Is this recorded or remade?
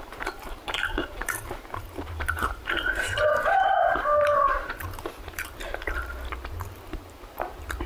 remade